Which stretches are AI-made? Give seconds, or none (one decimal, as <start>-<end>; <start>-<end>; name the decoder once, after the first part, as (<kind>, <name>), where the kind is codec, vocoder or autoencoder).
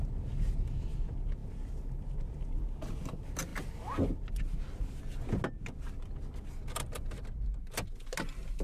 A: none